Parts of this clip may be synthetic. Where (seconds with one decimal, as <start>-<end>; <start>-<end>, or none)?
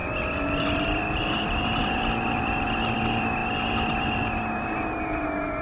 0.0-3.4; 4.8-5.6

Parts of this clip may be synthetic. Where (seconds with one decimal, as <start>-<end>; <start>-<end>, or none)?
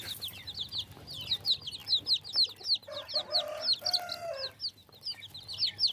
none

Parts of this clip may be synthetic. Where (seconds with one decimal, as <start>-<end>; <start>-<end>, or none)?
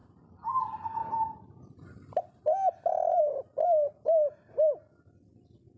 none